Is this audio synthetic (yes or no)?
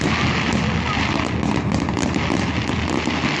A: no